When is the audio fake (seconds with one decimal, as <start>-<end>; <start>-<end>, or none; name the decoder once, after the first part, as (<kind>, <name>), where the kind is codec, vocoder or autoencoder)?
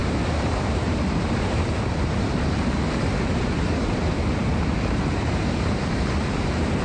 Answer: 0.0-4.0 (vocoder, BigVGAN v2); 4.4-6.8